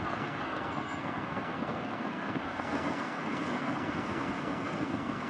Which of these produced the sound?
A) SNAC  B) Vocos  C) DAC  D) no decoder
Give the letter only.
A